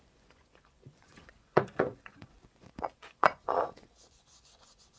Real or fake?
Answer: fake